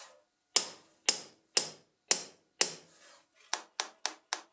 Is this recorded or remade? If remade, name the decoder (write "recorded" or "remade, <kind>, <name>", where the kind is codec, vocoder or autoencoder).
recorded